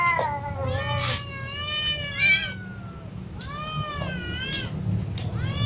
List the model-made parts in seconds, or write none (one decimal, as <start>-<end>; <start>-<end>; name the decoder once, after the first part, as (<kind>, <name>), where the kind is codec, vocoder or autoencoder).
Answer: none